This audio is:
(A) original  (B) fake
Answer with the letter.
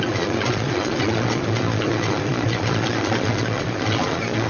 B